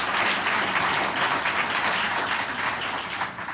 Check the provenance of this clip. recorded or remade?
recorded